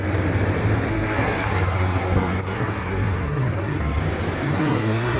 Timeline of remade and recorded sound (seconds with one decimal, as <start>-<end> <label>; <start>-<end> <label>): 0.0-0.9 recorded; 0.9-4.0 remade; 4.0-4.4 recorded; 4.4-5.2 remade